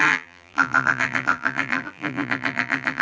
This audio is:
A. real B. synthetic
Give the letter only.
B